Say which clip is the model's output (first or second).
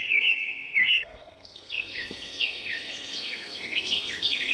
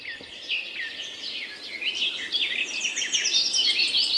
first